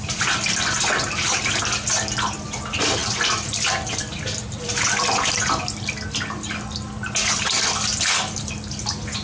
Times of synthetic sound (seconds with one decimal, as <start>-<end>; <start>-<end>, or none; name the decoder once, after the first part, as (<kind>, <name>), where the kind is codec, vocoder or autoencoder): none